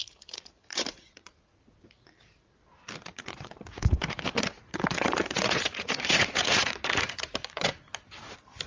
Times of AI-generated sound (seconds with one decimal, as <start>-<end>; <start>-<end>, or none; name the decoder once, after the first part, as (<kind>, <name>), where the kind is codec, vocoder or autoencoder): 0.0-2.0 (vocoder, Vocos); 3.1-7.9